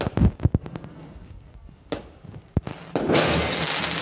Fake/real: real